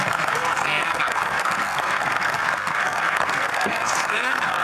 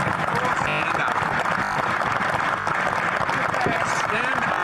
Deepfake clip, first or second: first